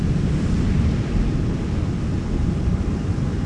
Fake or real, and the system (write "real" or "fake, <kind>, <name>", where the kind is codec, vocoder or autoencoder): real